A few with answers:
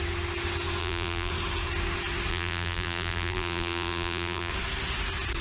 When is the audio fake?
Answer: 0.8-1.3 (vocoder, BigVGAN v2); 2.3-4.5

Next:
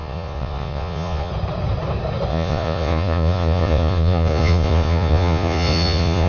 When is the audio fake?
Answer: 0.0-1.3 (vocoder, Vocos); 2.3-6.3

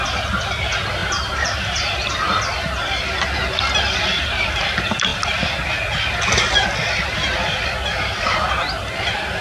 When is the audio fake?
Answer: 1.0-2.1 (vocoder, BigVGAN v2)